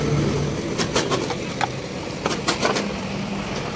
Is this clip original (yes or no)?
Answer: yes